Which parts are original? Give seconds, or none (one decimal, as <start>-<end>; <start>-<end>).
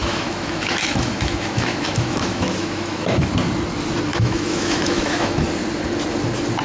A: 3.3-4.1; 5.4-6.6